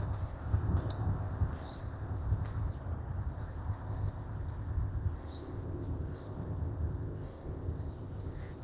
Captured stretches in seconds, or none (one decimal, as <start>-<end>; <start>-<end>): 2.7-3.4